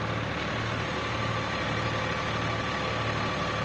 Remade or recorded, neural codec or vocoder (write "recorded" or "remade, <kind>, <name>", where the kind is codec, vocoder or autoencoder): recorded